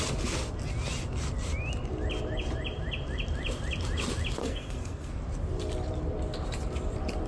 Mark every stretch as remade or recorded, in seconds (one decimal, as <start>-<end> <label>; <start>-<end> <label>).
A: 0.0-4.4 recorded; 4.4-5.2 remade; 5.2-7.3 recorded